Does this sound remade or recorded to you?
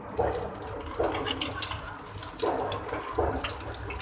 recorded